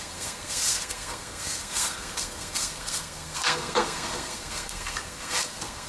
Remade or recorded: remade